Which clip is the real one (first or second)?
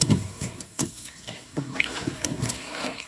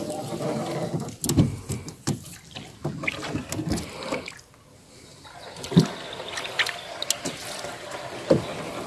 second